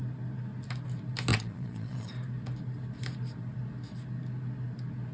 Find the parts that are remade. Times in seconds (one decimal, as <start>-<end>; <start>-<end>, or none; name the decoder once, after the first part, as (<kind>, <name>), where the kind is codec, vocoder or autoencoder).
1.3-2.1 (vocoder, Vocos)